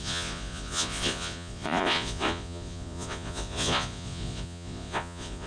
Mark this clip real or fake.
fake